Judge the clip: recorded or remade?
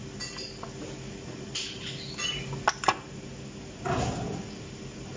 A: recorded